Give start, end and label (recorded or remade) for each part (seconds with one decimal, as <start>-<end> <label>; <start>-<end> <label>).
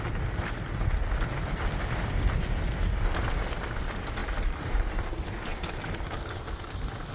0.0-4.2 recorded; 4.2-4.9 remade; 4.9-5.5 recorded; 5.5-6.2 remade; 6.2-7.1 recorded